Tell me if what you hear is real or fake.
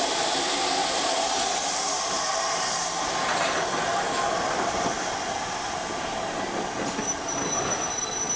real